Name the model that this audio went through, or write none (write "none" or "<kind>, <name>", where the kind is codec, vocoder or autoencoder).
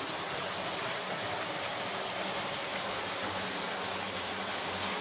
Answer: none